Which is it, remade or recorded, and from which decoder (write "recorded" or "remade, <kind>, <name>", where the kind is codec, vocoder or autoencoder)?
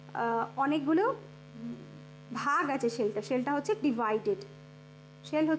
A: remade, autoencoder, DAC-VAE